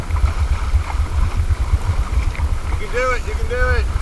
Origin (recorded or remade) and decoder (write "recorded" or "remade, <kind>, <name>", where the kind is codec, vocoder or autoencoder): recorded